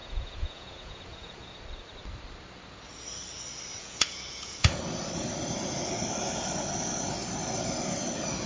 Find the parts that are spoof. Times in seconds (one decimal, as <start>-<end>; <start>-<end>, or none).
0.0-1.5; 3.7-4.8